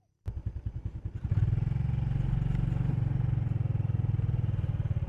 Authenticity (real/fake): real